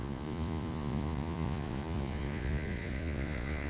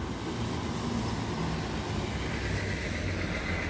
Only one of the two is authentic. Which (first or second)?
second